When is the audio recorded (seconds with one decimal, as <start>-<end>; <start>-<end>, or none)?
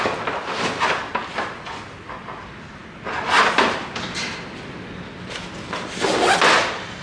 0.0-7.0